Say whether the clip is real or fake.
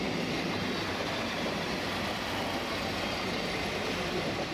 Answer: real